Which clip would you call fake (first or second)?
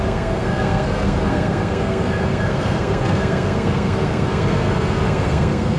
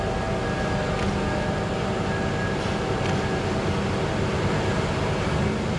first